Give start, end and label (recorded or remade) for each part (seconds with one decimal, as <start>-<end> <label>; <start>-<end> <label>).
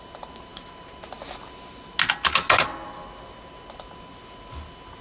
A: 0.0-5.0 recorded